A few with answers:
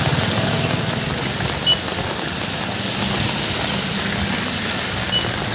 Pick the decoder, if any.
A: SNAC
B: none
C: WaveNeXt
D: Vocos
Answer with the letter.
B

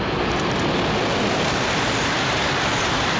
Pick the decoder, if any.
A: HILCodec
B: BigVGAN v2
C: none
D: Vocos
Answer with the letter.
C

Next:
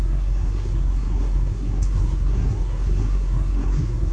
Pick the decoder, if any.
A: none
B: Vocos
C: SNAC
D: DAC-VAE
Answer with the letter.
C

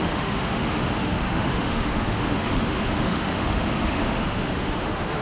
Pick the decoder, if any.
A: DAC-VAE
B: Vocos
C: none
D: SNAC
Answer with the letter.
A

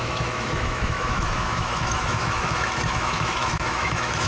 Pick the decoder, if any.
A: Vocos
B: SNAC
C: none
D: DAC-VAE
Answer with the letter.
D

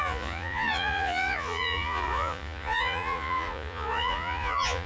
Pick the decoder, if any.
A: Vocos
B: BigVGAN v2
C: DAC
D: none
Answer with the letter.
A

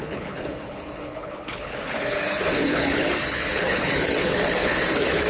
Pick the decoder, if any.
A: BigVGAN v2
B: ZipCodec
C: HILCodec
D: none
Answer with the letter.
C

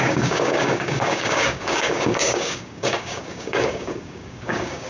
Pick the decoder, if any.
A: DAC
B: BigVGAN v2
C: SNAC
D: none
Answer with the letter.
A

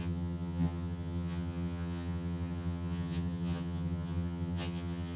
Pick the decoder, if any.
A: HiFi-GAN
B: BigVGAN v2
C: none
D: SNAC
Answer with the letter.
A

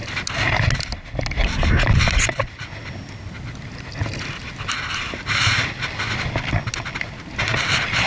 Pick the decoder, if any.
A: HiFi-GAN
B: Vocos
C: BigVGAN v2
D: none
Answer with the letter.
D